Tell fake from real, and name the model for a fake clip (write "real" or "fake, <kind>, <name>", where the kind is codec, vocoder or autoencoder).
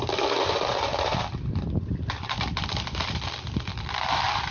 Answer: fake, vocoder, BigVGAN v2